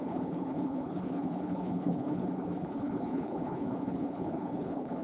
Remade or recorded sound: remade